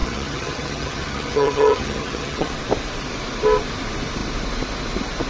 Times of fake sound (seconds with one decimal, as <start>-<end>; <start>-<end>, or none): 0.0-2.5